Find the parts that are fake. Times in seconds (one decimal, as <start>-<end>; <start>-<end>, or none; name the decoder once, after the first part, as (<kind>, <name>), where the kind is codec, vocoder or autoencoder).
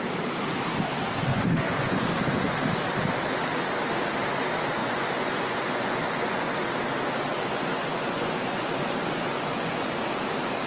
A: 1.3-2.2 (vocoder, Vocos); 4.8-6.6; 7.3-10.0